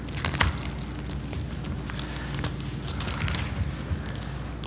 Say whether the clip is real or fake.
real